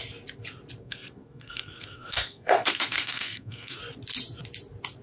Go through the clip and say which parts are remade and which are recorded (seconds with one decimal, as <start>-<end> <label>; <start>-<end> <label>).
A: 0.0-0.8 recorded; 0.8-3.8 remade; 3.8-5.0 recorded